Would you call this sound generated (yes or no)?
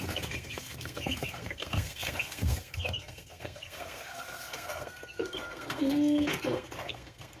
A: yes